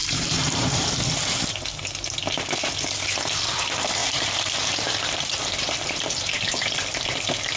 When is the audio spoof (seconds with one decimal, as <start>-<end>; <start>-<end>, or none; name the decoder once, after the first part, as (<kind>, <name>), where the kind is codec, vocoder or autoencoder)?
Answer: 0.0-0.9 (vocoder, BigVGAN v2); 4.0-6.7